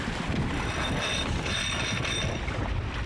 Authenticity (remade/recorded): recorded